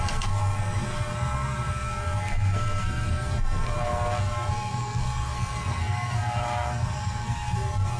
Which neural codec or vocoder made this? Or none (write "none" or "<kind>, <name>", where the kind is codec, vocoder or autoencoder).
codec, SNAC